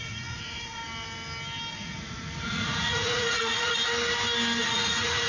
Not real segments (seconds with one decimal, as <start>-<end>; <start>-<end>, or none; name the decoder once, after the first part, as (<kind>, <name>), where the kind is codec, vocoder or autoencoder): 0.0-0.8 (vocoder, Vocos); 1.7-3.7; 4.6-5.3